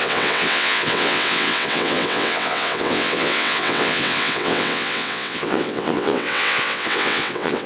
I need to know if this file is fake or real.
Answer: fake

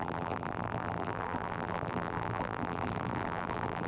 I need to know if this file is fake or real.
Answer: fake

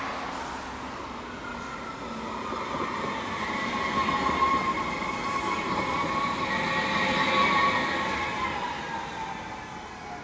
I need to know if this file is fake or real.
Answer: real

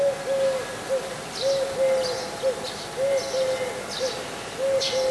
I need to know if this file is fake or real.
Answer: real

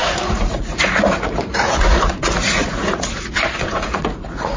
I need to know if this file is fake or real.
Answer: fake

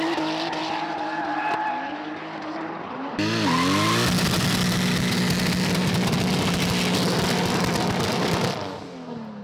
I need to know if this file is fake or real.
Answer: real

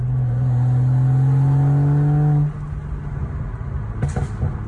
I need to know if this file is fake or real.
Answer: real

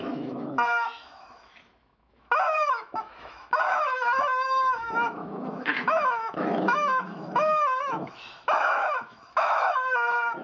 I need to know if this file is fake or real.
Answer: fake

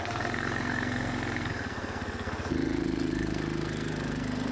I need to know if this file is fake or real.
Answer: fake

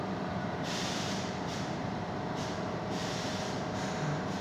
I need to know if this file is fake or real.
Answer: fake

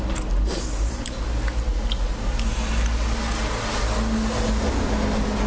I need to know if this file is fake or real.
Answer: real